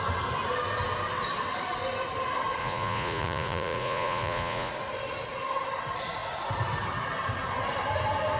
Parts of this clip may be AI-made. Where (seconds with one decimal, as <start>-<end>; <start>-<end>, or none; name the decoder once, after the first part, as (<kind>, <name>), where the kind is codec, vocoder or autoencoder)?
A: 2.6-4.7 (vocoder, Vocos)